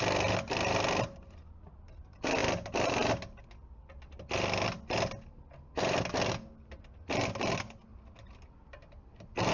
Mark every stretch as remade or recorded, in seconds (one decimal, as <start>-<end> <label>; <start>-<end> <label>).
0.0-9.5 recorded